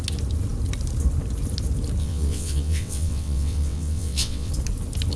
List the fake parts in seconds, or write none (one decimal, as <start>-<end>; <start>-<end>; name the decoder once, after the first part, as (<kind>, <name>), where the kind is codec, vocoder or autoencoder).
2.0-4.5 (vocoder, WaveNeXt)